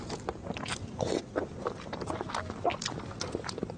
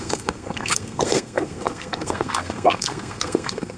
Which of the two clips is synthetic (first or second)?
second